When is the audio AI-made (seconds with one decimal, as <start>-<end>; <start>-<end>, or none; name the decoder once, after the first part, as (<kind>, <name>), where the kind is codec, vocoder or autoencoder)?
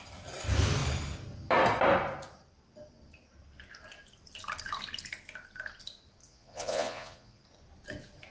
6.2-7.4 (vocoder, Vocos)